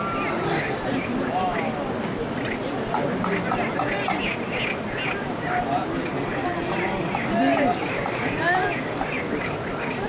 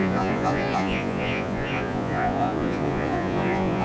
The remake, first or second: second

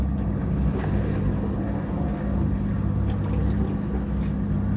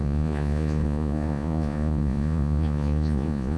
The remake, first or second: second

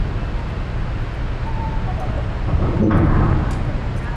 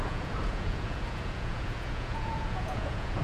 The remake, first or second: second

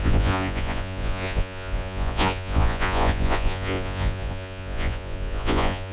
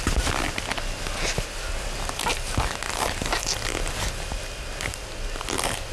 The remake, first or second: first